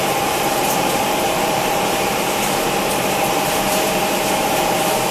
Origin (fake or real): fake